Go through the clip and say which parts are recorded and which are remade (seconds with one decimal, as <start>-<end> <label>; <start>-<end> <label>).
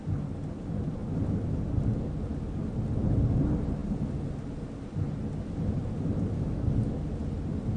0.0-7.8 recorded